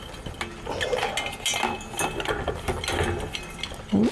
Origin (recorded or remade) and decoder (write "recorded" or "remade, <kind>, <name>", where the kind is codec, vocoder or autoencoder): recorded